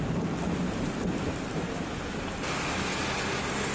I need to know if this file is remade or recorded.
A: recorded